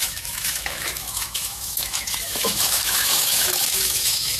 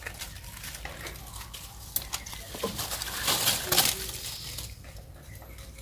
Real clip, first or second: second